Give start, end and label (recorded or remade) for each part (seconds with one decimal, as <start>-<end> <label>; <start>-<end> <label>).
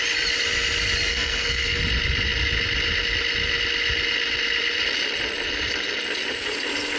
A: 0.0-1.1 recorded; 1.1-1.8 remade; 1.8-7.0 recorded